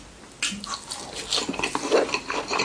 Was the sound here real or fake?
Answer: real